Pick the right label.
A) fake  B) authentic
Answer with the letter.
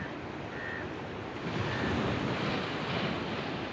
B